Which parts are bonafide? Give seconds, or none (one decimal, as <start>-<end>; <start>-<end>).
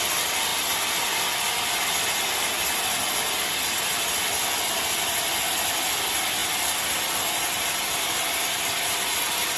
0.0-9.6